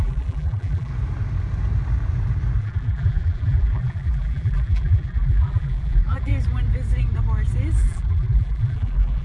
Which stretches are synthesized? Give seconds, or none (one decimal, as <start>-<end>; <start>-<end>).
0.0-0.9; 2.6-6.3; 7.8-9.2

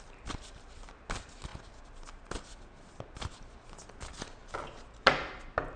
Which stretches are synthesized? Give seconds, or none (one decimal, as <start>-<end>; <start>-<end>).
none

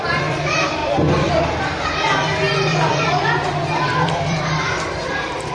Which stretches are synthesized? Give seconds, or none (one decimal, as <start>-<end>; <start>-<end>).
0.8-1.3; 2.7-5.5

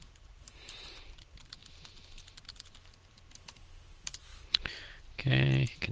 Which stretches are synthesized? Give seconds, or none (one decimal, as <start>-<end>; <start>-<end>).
0.0-1.6; 3.9-5.9

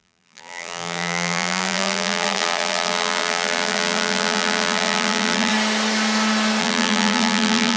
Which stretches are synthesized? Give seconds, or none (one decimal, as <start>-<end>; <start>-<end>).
0.0-5.5; 6.6-7.8